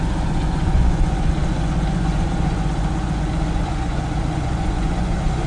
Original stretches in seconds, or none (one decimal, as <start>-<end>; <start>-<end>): none